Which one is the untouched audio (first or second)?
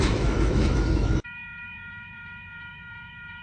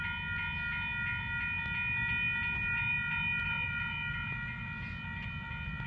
second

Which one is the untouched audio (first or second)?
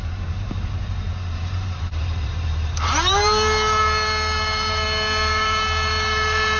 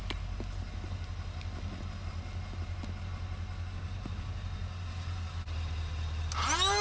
second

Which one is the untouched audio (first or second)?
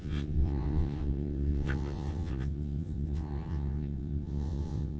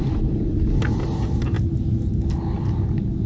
second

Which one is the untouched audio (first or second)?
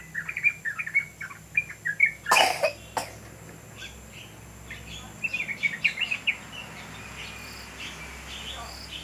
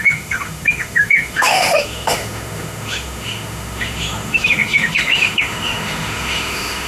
first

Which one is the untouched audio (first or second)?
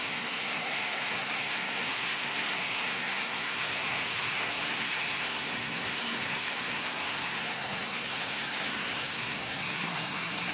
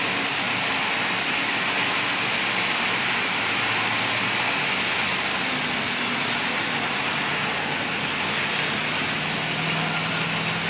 second